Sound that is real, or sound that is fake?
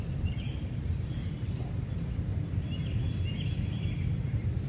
real